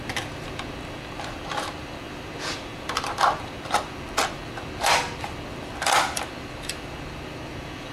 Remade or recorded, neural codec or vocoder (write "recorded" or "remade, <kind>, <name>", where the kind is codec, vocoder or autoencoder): remade, vocoder, BigVGAN v2